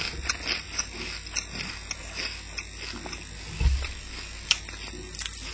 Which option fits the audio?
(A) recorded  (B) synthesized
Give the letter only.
A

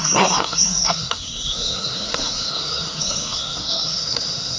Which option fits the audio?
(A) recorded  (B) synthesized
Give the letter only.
B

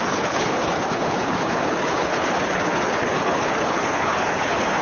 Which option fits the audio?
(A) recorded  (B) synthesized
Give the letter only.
B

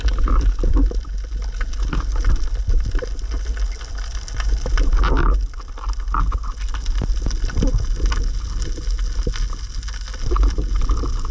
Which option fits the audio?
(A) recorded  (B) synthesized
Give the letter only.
A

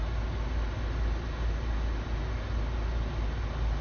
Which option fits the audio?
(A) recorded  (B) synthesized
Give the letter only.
A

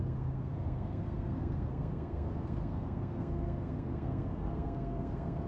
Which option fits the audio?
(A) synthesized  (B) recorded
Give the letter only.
A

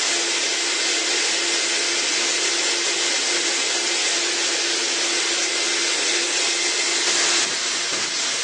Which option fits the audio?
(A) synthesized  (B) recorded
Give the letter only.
B